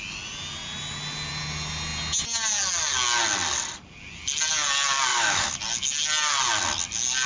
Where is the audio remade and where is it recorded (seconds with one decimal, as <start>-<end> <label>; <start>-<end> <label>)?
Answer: 0.0-5.1 recorded; 5.1-5.6 remade; 5.6-7.3 recorded